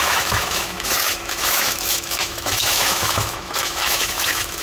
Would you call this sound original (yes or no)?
no